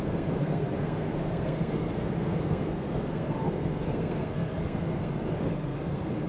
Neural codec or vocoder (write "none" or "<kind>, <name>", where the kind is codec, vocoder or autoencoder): codec, SNAC